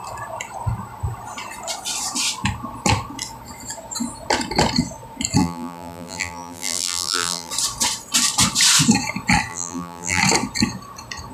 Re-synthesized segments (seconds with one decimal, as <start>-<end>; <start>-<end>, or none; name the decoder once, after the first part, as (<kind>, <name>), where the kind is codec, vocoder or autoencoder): 5.4-7.5 (vocoder, BigVGAN v2); 9.5-10.2